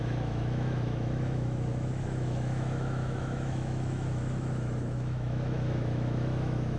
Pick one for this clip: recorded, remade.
remade